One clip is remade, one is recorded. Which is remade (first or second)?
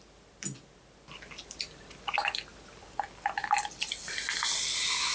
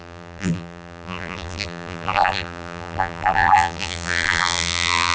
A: second